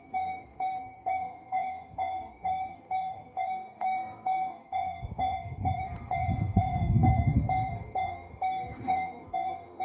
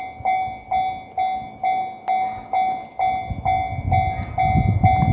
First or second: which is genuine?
second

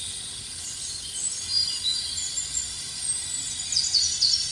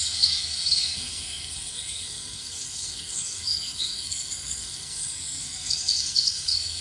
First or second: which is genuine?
first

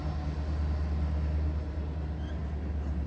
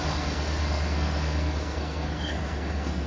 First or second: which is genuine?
first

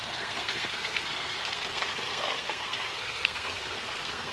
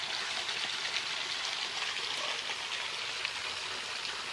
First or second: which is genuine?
second